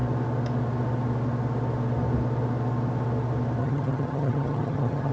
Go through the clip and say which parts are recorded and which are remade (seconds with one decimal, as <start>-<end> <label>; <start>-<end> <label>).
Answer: 0.0-3.6 recorded; 3.6-5.1 remade